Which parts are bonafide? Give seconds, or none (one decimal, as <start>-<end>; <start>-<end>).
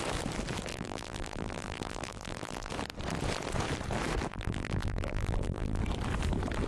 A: 0.0-0.7; 2.7-4.3; 5.8-6.7